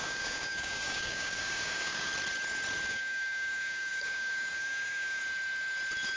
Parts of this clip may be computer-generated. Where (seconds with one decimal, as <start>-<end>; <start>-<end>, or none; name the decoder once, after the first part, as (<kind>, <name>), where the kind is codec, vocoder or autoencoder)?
0.0-2.1 (codec, DAC); 2.9-5.2